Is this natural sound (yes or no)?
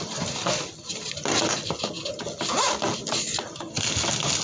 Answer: yes